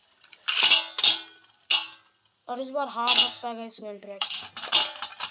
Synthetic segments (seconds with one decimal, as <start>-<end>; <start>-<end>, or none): 2.4-4.5